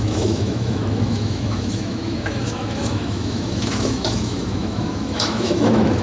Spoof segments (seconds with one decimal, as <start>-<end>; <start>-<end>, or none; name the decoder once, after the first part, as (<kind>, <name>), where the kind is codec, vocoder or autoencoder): 0.0-6.0 (autoencoder, DAC-VAE)